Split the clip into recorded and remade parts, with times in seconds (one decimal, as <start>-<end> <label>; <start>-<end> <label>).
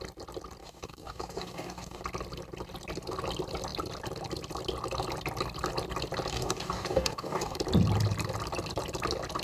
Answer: 0.0-0.6 recorded; 0.6-2.0 remade; 2.0-6.3 recorded; 6.3-7.6 remade; 7.6-9.4 recorded